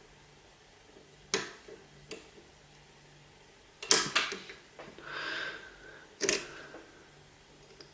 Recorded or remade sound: recorded